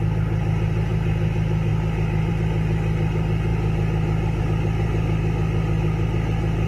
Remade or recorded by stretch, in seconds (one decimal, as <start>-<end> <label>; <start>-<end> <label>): 0.0-6.7 recorded